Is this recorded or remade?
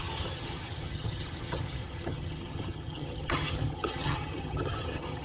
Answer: remade